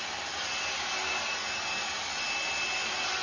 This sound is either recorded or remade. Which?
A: recorded